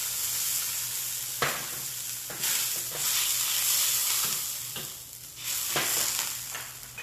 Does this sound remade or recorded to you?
recorded